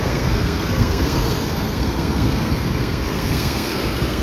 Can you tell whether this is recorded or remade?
remade